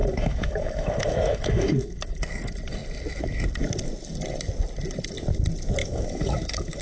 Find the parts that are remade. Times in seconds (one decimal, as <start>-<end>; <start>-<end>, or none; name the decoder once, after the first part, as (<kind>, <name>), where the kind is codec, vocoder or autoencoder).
0.0-2.2 (autoencoder, DAC-VAE); 5.8-6.8